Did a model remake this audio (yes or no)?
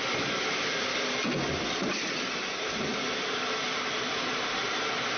no